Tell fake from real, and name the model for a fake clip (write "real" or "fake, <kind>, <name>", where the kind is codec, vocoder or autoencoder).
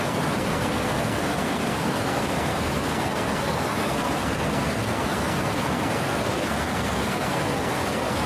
fake, codec, SNAC